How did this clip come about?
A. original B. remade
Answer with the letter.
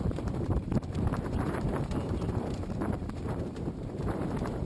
B